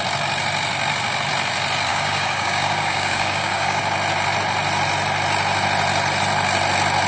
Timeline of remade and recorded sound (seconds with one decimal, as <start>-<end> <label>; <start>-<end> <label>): 0.0-1.9 recorded; 1.9-3.8 remade; 3.8-7.1 recorded